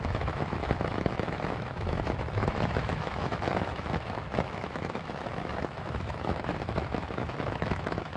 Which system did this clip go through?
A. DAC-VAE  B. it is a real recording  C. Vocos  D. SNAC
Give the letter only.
A